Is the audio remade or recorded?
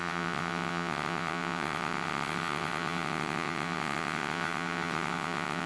remade